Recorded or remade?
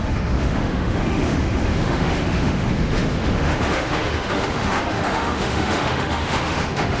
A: remade